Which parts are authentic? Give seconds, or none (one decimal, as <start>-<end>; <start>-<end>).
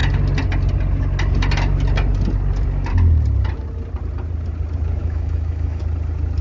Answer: 0.0-5.0; 5.8-6.4